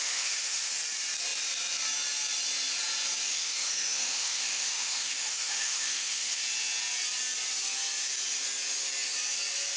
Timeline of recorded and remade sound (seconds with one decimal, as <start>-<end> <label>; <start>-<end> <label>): 0.0-0.7 remade; 0.7-3.3 recorded; 3.3-6.4 remade; 6.4-9.8 recorded